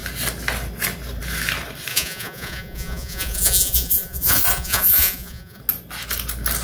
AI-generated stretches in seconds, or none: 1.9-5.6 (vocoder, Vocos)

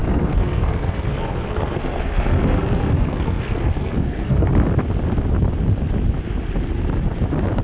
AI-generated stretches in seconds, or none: 0.0-4.5 (codec, SNAC)

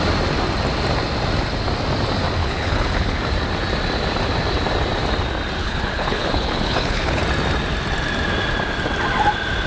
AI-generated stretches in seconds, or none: 2.4-3.2 (codec, HILCodec); 5.6-7.2

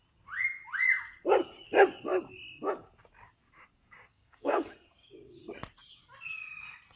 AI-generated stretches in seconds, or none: 4.1-5.1 (codec, SNAC)

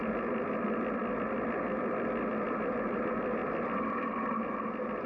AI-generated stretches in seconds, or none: none

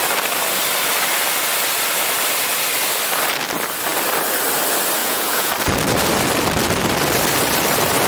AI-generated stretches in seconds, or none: 5.0-5.5 (vocoder, Vocos)

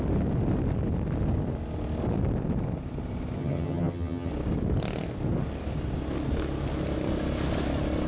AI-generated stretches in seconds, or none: 3.4-4.3 (vocoder, HiFi-GAN)